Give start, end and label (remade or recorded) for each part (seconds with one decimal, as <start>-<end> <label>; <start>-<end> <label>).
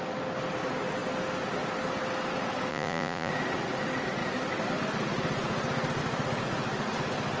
0.0-2.7 recorded; 2.7-3.3 remade; 3.3-7.4 recorded